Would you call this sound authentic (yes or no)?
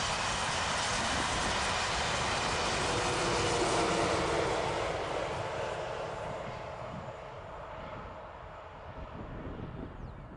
yes